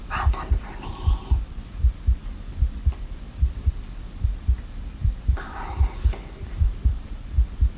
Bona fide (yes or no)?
yes